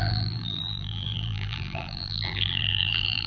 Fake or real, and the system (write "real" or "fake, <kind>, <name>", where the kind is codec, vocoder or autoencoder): fake, vocoder, BigVGAN v2